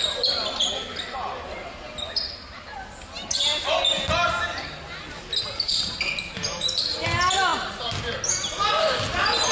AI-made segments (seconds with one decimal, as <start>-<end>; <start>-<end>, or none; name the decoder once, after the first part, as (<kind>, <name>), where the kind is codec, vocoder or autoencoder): none